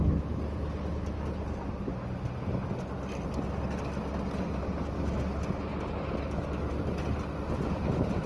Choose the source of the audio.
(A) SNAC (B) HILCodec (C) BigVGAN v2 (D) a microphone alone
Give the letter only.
D